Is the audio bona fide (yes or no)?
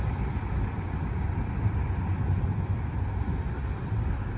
yes